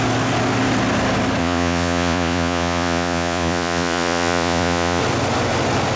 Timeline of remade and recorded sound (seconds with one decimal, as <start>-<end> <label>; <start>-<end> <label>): 0.0-1.4 recorded; 1.4-5.0 remade; 5.0-6.0 recorded